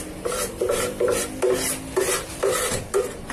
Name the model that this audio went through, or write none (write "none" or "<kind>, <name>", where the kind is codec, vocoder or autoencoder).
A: none